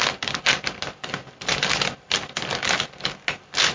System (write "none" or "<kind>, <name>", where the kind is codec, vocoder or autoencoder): none